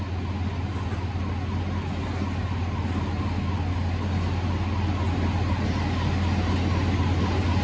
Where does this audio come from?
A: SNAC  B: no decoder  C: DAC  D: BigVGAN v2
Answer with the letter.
B